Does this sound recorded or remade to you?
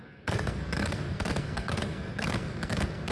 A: remade